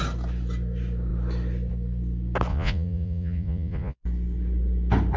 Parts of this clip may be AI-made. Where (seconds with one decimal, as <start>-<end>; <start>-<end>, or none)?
2.5-4.0